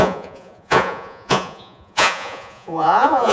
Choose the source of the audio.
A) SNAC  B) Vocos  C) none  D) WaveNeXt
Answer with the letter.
B